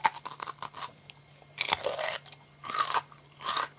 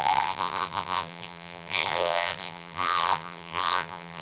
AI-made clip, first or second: second